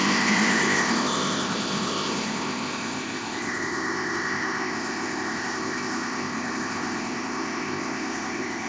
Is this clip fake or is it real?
fake